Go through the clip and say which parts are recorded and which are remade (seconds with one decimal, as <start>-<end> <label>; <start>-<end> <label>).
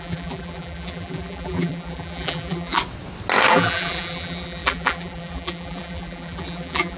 0.0-2.8 remade; 2.8-3.5 recorded; 3.5-7.0 remade